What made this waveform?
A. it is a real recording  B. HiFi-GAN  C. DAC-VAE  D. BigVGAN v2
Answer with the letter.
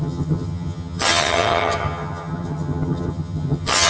B